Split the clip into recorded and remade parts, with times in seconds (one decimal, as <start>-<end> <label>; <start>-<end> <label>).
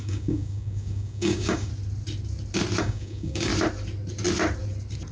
0.0-1.7 remade; 1.7-2.8 recorded; 2.8-3.5 remade; 3.5-5.1 recorded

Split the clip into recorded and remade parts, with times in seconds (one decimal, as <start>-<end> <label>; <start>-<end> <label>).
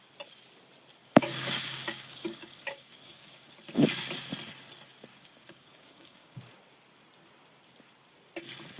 0.0-1.0 recorded; 1.0-3.5 remade; 3.5-5.1 recorded; 5.1-6.4 remade; 6.4-8.8 recorded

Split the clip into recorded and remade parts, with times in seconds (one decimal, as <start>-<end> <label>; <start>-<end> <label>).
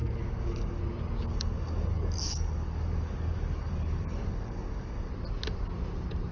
0.0-0.8 remade; 0.8-1.3 recorded; 1.3-5.1 remade; 5.1-6.3 recorded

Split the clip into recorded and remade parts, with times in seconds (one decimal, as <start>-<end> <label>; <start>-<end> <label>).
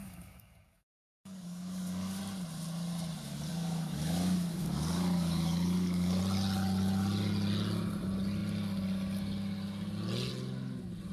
0.0-2.2 remade; 2.2-3.5 recorded; 3.5-6.2 remade; 6.2-11.1 recorded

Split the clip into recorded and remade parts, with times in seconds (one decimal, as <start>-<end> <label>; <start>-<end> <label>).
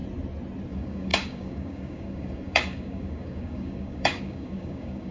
0.0-0.7 recorded; 0.7-5.1 remade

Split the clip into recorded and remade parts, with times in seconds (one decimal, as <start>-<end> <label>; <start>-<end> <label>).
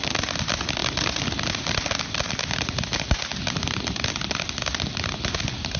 0.0-5.8 recorded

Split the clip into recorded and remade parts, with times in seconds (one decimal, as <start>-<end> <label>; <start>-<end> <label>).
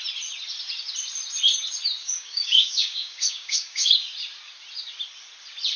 0.0-2.0 recorded; 2.0-3.9 remade; 3.9-5.8 recorded